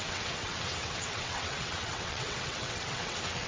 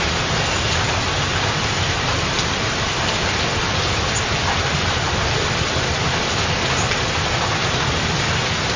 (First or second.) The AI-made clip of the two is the first